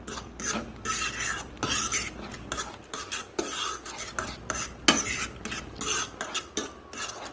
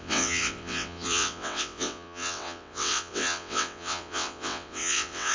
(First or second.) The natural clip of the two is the first